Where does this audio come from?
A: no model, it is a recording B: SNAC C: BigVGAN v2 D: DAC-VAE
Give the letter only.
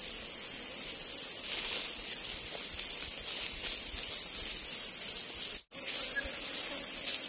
A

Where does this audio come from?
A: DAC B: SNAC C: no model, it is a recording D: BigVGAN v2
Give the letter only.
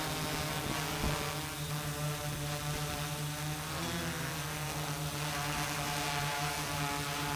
C